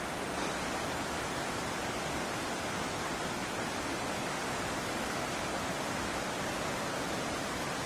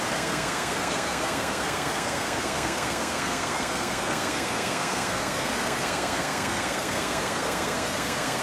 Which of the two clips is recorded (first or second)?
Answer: first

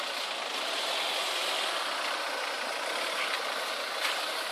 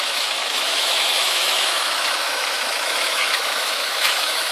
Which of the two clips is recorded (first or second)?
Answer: first